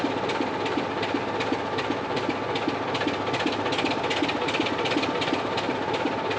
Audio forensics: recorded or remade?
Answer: recorded